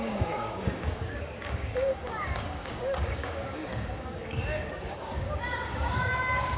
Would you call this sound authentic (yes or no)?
no